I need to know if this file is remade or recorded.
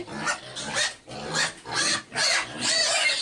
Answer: recorded